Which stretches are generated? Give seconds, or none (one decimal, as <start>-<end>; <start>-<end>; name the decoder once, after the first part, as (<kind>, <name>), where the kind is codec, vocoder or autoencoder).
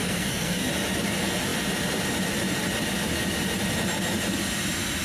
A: 0.0-0.7 (codec, SNAC)